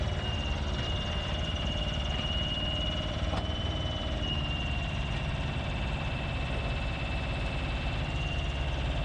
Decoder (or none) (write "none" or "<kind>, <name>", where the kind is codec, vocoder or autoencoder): vocoder, BigVGAN v2